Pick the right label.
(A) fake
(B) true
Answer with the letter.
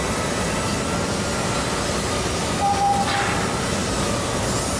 B